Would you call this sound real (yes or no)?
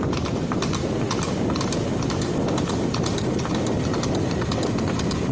yes